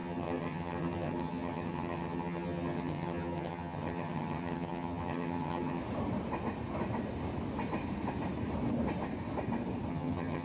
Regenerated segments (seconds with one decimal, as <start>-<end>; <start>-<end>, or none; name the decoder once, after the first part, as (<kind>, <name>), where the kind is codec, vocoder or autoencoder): 0.0-5.8 (vocoder, HiFi-GAN); 9.9-10.4